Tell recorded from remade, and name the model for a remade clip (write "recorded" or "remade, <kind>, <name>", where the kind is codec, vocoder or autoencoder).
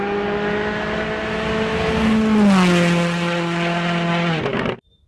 recorded